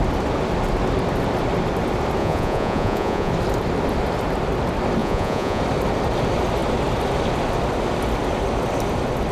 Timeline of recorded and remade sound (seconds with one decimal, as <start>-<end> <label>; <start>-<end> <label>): 0.0-2.2 recorded; 2.2-3.3 remade; 3.3-5.0 recorded; 5.0-5.6 remade; 5.6-9.3 recorded